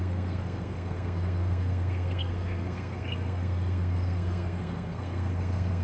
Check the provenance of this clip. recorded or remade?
remade